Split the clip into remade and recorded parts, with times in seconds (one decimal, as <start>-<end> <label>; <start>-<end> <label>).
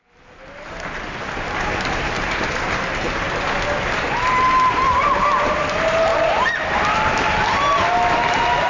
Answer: 0.0-8.7 recorded